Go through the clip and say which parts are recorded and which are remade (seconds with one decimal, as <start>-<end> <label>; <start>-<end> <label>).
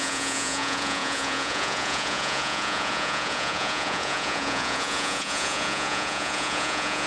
0.0-7.1 remade